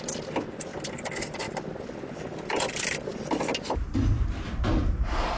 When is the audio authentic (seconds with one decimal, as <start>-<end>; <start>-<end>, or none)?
0.0-5.4